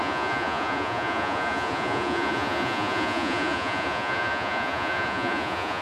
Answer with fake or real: fake